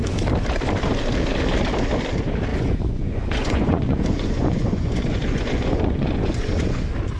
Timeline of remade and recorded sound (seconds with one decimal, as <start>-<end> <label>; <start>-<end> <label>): 0.0-2.5 recorded; 2.5-6.8 remade; 6.8-7.2 recorded